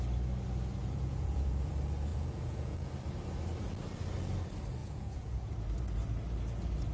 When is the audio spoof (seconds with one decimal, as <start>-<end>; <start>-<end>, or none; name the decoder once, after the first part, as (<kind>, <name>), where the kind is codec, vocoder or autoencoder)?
0.8-1.7 (vocoder, Vocos); 2.1-2.9; 4.8-5.5